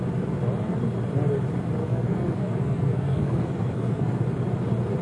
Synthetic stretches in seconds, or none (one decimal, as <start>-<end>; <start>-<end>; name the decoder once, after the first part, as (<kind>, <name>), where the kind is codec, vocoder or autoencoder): 1.8-4.2 (codec, SNAC)